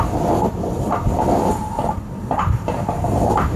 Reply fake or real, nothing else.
fake